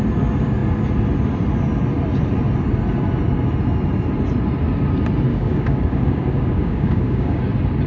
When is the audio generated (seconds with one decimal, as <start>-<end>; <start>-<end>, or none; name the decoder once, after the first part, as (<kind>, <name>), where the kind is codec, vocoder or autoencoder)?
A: 5.3-7.4 (codec, DAC)